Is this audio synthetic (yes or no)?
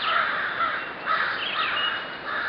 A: no